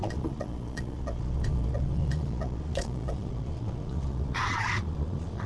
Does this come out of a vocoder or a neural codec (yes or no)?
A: yes